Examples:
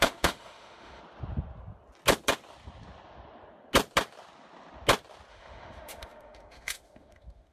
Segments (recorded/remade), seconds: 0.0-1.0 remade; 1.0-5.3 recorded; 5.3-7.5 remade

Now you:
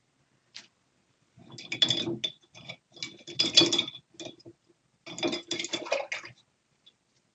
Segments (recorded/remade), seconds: 0.0-7.3 recorded

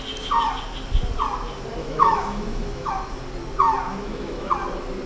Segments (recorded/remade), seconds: 0.0-1.8 recorded; 1.8-2.9 remade; 2.9-3.9 recorded; 3.9-4.5 remade; 4.5-5.1 recorded

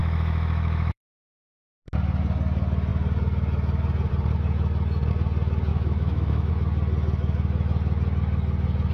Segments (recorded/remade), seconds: 0.0-1.7 remade; 1.7-5.7 recorded; 5.7-6.5 remade; 6.5-8.9 recorded

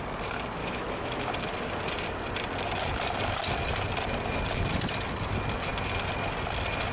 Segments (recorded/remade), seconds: 0.0-0.6 recorded; 0.6-1.3 remade; 1.3-6.9 recorded

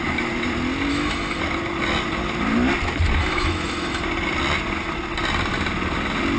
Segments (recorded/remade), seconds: 0.0-0.9 recorded; 0.9-1.4 remade; 1.4-3.2 recorded; 3.2-4.0 remade; 4.0-6.4 recorded

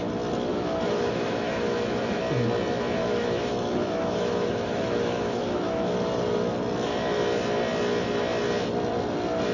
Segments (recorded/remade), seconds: 0.0-0.5 recorded; 0.5-2.2 remade; 2.2-3.0 recorded; 3.0-5.9 remade; 5.9-9.5 recorded

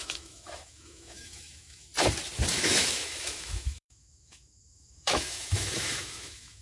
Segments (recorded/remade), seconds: 0.0-1.9 remade; 1.9-2.5 recorded; 2.5-6.6 remade